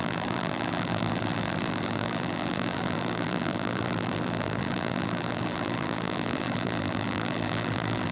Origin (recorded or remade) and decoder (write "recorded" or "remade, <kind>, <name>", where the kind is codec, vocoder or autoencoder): remade, vocoder, BigVGAN v2